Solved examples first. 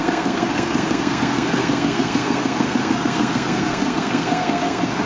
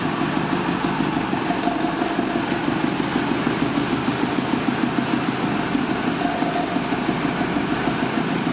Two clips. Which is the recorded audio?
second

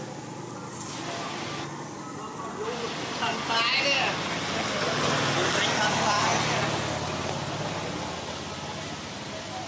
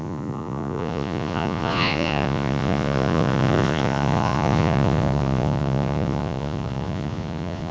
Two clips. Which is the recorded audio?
first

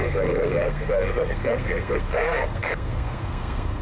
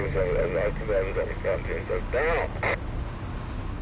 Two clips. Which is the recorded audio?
second